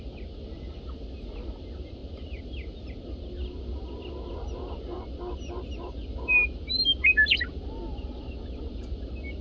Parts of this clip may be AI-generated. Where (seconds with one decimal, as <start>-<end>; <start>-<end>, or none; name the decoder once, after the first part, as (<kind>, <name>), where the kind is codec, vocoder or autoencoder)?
none